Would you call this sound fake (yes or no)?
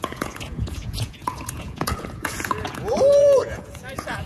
yes